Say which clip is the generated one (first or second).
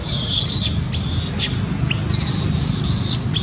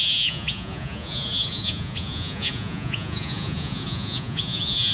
second